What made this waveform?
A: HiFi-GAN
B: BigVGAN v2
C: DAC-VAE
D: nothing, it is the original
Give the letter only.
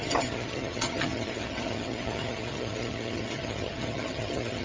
A